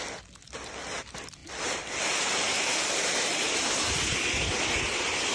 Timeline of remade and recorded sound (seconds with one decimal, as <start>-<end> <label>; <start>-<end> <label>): 0.0-5.3 recorded